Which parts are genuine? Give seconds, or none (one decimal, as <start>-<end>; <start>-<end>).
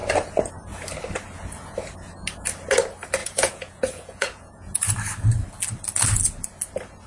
0.0-3.2; 4.9-7.1